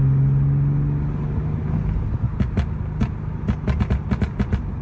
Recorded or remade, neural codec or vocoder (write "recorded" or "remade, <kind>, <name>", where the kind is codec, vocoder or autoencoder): recorded